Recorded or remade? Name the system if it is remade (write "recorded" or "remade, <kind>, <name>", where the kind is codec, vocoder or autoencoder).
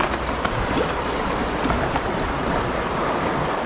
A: recorded